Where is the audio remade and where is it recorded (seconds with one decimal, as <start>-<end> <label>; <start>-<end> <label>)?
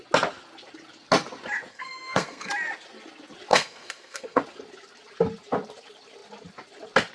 0.0-1.7 recorded; 1.7-2.5 remade; 2.5-3.5 recorded; 3.5-4.4 remade; 4.4-7.1 recorded